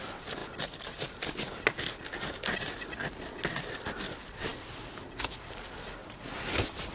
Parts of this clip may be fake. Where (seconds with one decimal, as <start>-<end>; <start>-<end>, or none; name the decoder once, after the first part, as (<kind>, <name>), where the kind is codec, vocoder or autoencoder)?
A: 6.0-6.9 (vocoder, BigVGAN v2)